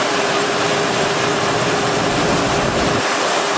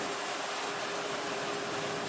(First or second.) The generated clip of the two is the first